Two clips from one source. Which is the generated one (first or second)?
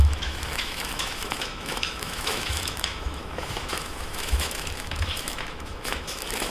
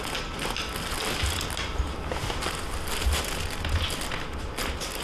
first